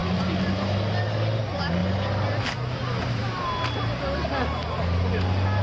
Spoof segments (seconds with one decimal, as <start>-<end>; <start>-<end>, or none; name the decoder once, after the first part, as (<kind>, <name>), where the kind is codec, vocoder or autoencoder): none

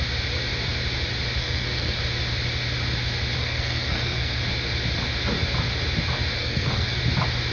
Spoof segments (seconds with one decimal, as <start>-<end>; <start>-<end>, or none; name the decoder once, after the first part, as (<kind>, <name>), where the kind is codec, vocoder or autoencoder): 1.4-2.0 (codec, SNAC); 3.4-4.4; 6.4-7.0

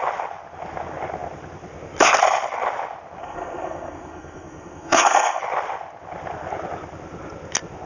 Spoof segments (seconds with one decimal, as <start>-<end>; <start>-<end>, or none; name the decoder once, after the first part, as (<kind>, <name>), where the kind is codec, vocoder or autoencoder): 3.2-5.4 (codec, SNAC)

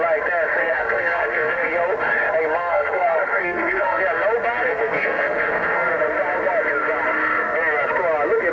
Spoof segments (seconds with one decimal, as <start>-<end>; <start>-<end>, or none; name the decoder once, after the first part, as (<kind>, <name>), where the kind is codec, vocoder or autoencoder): 0.6-1.7 (codec, SNAC); 2.6-4.0; 4.7-5.9

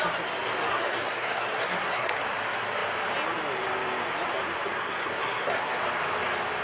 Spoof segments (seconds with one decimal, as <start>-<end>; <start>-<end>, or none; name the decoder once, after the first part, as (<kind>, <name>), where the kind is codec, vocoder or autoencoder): 0.7-2.2 (codec, SNAC); 4.8-5.8

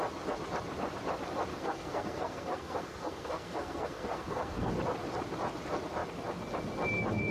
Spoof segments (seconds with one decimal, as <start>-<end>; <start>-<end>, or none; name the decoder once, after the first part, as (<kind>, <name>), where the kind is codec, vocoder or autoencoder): 1.5-4.7 (codec, SNAC)

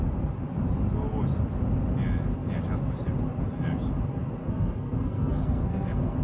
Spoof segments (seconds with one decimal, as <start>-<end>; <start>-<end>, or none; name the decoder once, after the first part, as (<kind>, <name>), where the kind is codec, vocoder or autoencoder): 4.4-6.2 (codec, SNAC)

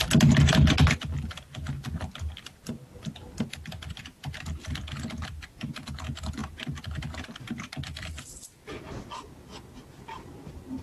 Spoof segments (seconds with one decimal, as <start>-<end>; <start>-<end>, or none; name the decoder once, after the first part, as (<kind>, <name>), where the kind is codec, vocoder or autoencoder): none